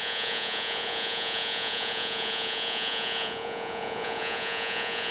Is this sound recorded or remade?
remade